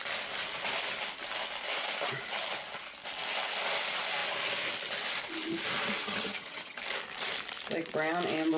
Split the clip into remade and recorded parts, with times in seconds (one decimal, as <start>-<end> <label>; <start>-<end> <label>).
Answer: 0.0-6.0 recorded; 6.0-6.8 remade; 6.8-8.6 recorded